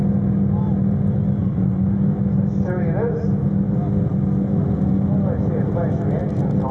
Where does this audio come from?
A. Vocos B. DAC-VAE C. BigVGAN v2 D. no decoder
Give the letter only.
D